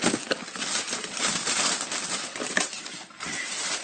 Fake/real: real